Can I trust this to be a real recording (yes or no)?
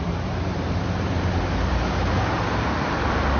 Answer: no